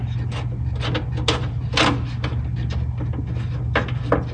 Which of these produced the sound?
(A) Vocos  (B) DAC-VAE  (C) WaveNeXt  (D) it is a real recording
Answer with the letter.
D